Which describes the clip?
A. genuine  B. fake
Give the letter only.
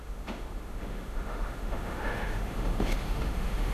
B